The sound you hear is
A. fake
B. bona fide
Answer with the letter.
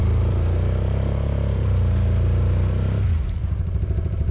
A